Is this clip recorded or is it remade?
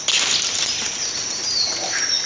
recorded